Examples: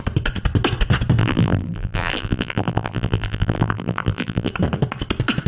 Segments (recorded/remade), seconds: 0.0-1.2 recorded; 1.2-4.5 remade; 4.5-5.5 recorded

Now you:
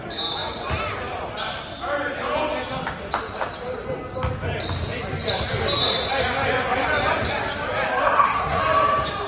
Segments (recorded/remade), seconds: 0.0-8.0 recorded; 8.0-8.6 remade; 8.6-9.3 recorded